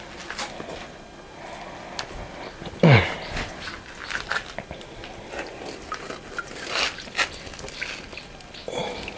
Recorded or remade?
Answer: recorded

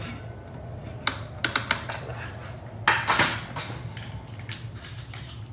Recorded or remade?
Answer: recorded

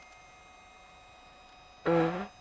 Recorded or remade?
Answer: recorded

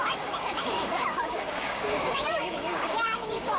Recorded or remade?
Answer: remade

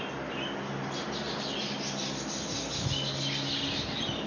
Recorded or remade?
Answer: recorded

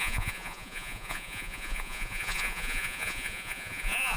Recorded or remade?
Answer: remade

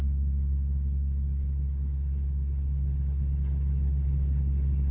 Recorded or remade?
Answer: remade